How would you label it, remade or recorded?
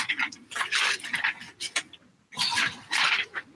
recorded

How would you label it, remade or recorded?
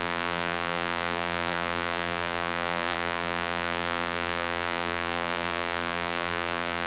remade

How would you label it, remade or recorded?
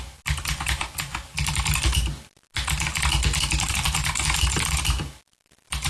recorded